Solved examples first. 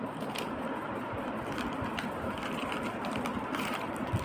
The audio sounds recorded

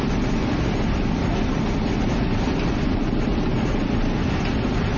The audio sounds recorded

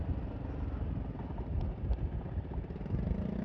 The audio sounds remade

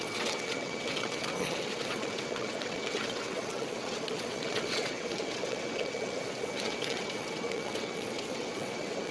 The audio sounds remade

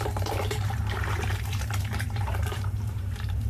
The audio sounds remade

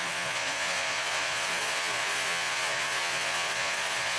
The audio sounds remade